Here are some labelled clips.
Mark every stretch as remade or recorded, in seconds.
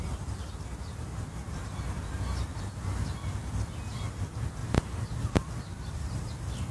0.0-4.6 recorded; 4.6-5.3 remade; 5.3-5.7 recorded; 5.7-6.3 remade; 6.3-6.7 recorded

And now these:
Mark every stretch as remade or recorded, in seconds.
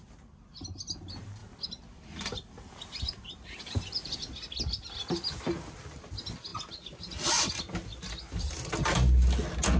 0.0-9.8 recorded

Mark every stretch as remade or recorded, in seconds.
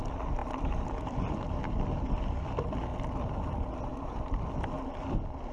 0.0-0.4 recorded; 0.4-1.9 remade; 1.9-5.5 recorded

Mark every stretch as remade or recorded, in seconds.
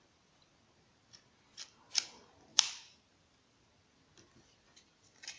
0.0-2.5 recorded; 2.5-3.7 remade; 3.7-5.4 recorded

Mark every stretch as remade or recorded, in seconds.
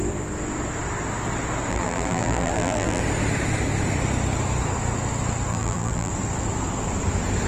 0.0-1.7 recorded; 1.7-3.0 remade; 3.0-5.5 recorded; 5.5-6.1 remade; 6.1-7.5 recorded